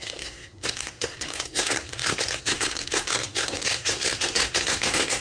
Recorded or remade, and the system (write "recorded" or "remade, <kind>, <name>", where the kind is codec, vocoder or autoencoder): remade, codec, SNAC